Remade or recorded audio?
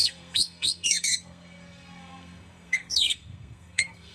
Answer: remade